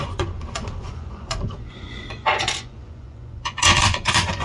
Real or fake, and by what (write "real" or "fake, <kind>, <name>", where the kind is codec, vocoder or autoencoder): fake, vocoder, Vocos